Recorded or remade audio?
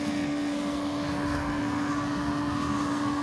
remade